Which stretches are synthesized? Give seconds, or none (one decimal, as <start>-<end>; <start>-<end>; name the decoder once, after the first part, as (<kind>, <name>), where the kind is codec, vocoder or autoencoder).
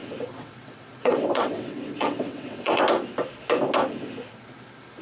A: 0.0-2.8 (vocoder, WaveNeXt)